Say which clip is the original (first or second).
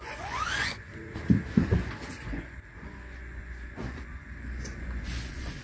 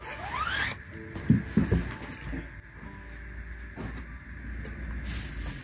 second